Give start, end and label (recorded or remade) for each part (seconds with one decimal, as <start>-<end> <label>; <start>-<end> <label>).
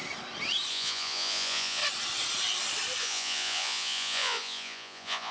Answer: 0.0-0.7 recorded; 0.7-1.8 remade; 1.8-3.0 recorded; 3.0-5.3 remade